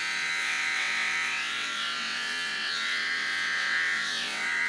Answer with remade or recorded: remade